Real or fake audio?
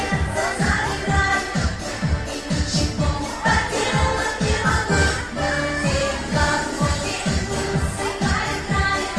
real